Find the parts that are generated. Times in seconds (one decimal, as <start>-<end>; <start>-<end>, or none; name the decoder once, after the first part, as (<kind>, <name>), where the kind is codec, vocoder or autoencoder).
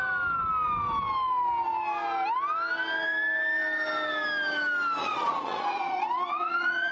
5.0-6.9 (vocoder, Vocos)